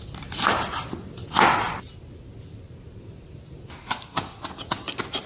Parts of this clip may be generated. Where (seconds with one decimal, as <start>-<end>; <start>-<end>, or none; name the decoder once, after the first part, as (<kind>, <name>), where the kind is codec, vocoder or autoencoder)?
none